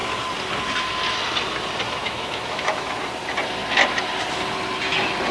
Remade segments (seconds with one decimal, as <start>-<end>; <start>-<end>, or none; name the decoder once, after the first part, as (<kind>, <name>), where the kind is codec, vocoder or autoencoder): 2.0-3.0 (autoencoder, DAC-VAE)